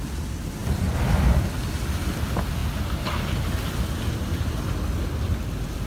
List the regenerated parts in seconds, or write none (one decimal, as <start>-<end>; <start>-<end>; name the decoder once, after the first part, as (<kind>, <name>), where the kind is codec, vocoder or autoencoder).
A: none